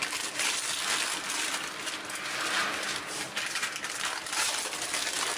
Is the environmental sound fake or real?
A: real